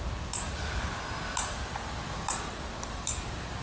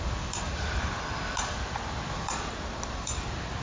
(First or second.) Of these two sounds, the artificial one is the second